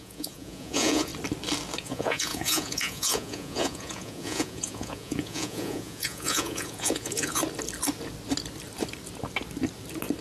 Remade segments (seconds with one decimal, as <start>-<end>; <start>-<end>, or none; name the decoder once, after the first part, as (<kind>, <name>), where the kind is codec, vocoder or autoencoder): 0.0-1.1 (vocoder, Vocos); 1.8-7.4